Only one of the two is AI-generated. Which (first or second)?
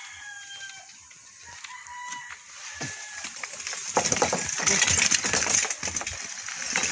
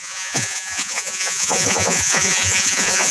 second